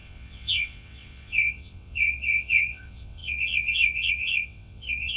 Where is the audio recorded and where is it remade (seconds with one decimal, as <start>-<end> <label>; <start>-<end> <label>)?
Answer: 0.0-5.2 remade